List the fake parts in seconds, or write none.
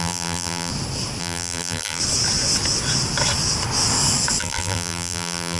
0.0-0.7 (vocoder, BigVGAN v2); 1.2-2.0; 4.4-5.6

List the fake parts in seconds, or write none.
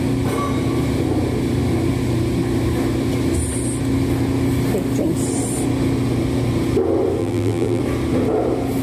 7.2-7.8 (vocoder, BigVGAN v2)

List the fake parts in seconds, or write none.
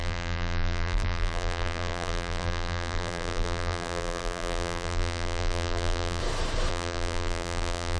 0.0-6.2 (vocoder, BigVGAN v2); 6.7-8.0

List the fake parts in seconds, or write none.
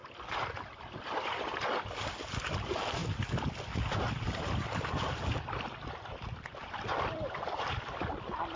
3.0-7.8 (vocoder, BigVGAN v2)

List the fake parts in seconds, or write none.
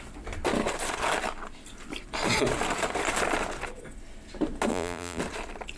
4.7-5.2 (vocoder, BigVGAN v2)